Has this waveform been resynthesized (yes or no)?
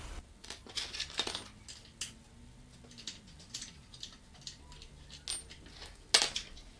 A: no